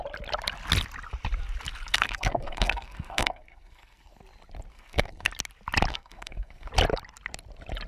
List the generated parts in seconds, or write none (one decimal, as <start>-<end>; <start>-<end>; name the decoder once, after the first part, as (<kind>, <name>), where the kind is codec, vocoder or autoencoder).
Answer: 1.9-4.2 (codec, SNAC); 4.7-5.3; 5.9-6.7